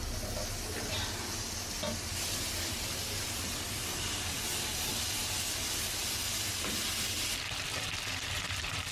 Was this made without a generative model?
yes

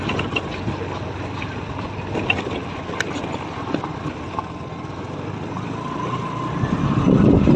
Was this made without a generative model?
yes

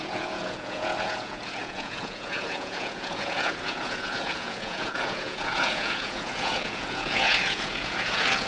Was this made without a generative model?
no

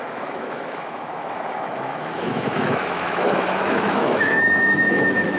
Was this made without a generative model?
no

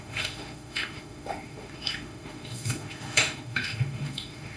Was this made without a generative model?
no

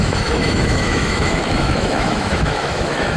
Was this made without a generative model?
no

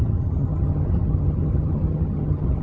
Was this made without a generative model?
no